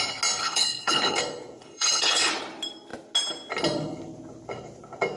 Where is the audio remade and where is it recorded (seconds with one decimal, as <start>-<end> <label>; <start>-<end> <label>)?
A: 0.0-0.4 recorded; 0.4-1.2 remade; 1.2-1.6 recorded; 1.6-2.3 remade; 2.3-5.2 recorded